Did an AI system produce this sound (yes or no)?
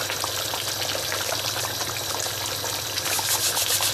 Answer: no